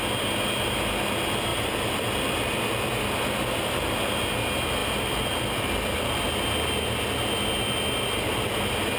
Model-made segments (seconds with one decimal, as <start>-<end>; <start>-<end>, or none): 1.5-3.7; 4.8-6.2